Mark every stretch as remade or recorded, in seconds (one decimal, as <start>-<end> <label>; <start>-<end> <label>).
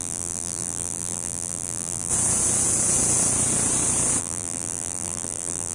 0.0-2.1 remade; 2.1-4.2 recorded; 4.2-5.7 remade